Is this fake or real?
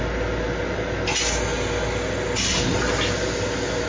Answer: real